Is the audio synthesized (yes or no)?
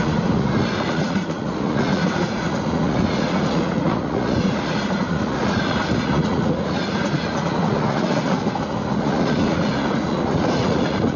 yes